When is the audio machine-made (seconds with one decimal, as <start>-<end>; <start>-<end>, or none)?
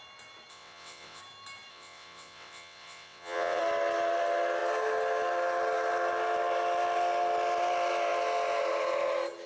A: 0.5-1.2; 1.7-3.6